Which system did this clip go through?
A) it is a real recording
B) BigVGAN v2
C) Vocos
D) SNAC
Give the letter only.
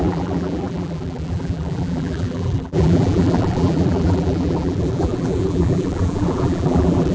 B